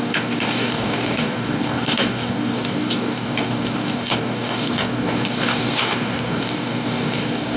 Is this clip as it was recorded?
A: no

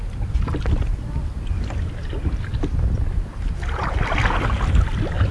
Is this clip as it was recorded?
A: yes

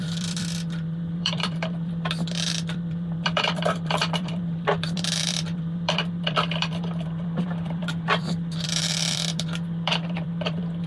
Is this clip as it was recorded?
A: no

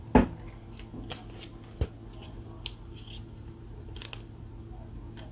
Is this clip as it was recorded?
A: yes